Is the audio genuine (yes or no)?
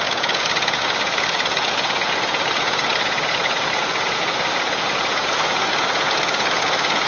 no